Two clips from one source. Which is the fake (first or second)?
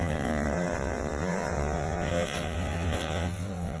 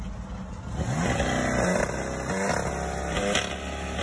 first